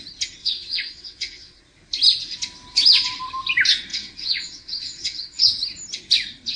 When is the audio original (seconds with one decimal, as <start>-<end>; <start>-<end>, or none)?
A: 0.0-0.4; 1.6-3.9; 5.4-6.6